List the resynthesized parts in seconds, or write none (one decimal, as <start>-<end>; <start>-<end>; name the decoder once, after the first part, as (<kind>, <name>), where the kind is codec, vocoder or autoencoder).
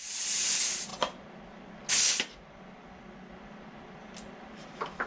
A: none